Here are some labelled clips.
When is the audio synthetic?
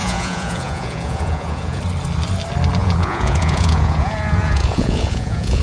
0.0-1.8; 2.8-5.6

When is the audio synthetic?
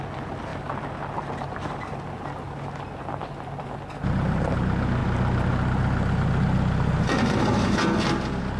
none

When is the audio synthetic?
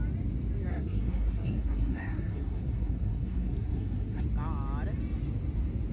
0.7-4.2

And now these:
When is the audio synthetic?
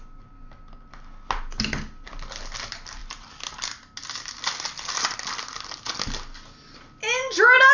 none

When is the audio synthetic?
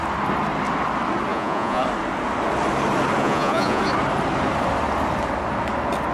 1.3-1.8; 3.2-3.8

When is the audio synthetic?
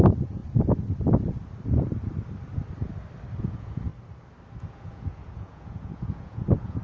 0.0-0.4; 3.4-3.9; 4.6-6.8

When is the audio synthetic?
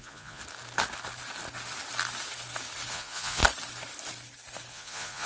0.0-0.4; 2.9-3.4; 4.7-5.3